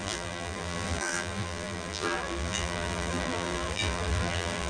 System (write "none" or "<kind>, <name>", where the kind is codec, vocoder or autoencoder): vocoder, BigVGAN v2